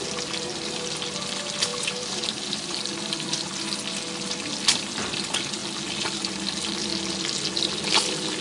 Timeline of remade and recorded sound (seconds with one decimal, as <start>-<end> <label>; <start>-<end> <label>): 0.0-1.7 recorded; 1.7-3.5 remade; 3.5-8.4 recorded